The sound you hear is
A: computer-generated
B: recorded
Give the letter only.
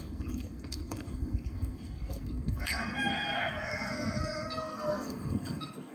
A